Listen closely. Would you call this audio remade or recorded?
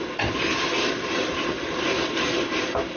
recorded